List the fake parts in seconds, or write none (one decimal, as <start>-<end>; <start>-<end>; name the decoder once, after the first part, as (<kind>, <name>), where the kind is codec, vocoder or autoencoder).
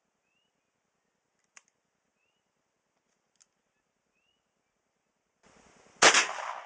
none